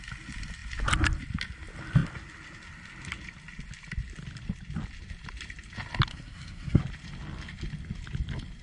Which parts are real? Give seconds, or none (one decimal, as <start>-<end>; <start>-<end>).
0.0-6.1; 6.8-8.6